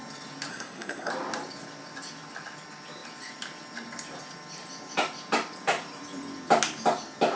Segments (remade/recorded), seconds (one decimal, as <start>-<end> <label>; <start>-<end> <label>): 0.0-0.5 recorded; 0.5-1.1 remade; 1.1-7.4 recorded